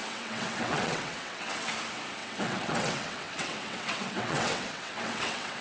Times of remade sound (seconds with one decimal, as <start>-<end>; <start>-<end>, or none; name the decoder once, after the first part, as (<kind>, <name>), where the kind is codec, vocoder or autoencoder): 0.0-1.7 (vocoder, WaveNeXt); 2.2-5.6